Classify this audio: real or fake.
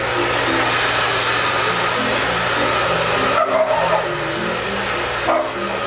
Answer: real